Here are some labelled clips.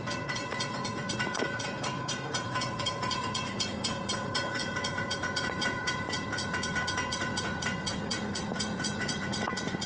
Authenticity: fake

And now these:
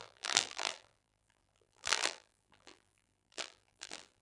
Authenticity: fake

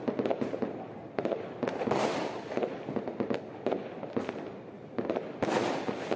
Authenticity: real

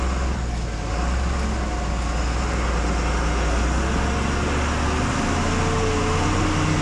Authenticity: real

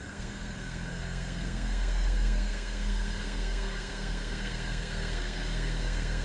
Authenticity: fake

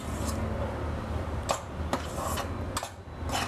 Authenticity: real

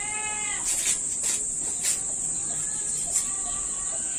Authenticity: real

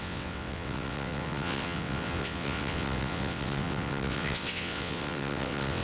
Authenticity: fake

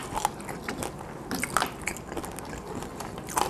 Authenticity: real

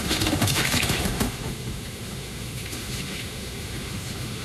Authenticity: fake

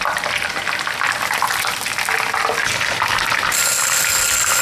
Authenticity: real